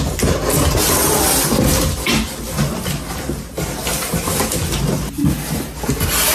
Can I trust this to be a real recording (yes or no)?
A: yes